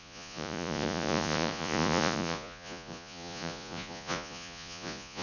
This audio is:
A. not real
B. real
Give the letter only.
A